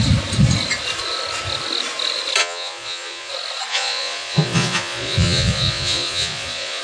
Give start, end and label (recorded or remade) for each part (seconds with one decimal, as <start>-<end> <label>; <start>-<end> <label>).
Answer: 0.0-2.4 recorded; 2.4-3.3 remade; 3.3-3.7 recorded; 3.7-6.8 remade